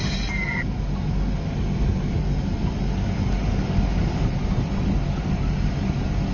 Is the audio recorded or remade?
recorded